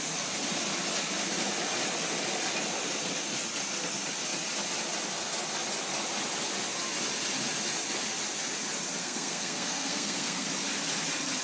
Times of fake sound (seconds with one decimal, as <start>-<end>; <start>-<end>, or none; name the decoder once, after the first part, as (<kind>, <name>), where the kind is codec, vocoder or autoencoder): 9.0-10.5 (codec, SNAC)